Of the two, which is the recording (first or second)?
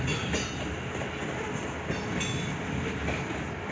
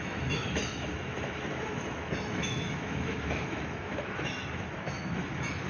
first